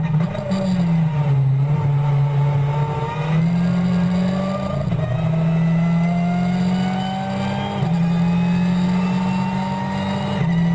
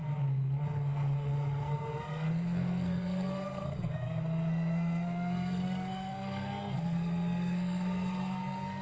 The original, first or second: first